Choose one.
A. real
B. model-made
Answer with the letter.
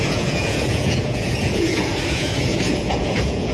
B